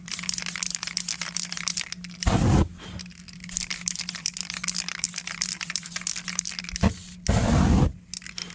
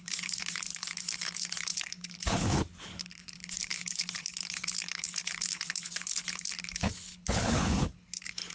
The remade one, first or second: second